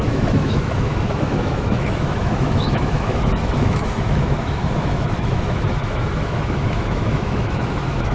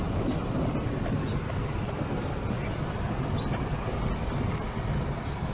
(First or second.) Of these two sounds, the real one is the second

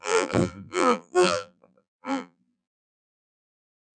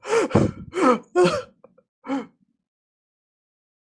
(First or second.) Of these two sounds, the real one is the second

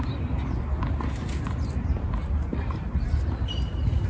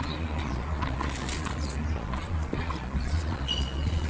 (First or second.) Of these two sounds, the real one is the first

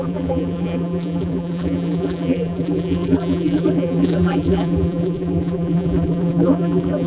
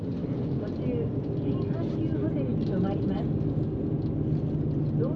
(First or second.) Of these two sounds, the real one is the second